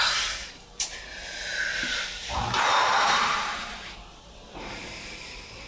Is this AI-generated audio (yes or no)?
yes